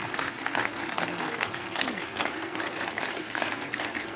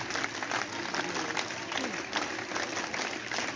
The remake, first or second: first